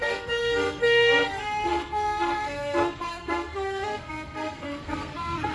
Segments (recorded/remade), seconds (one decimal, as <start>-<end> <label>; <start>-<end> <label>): 0.0-5.5 remade